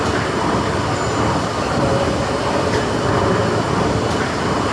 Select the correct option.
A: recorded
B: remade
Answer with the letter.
A